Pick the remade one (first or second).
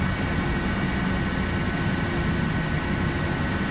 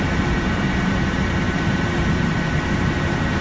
second